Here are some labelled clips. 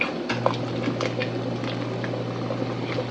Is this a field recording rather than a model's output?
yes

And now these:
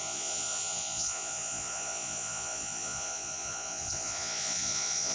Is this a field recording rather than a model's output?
no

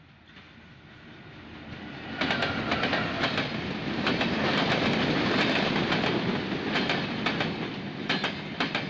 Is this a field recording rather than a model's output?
yes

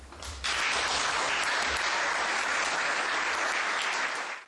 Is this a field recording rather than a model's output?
yes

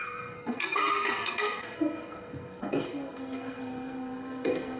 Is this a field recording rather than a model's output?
no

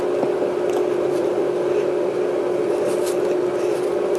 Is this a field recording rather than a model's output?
yes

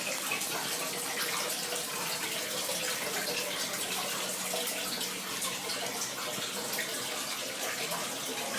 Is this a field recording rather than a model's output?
yes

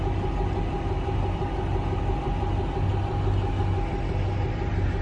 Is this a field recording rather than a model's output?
yes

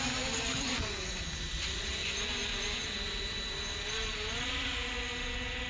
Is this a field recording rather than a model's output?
yes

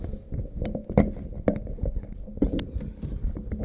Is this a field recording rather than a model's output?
yes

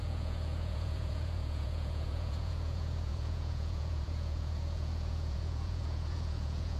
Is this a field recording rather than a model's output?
no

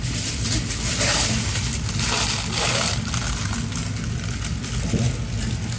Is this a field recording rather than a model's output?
yes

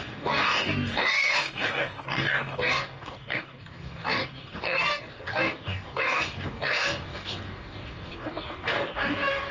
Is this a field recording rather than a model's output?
no